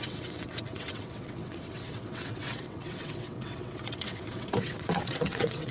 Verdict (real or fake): fake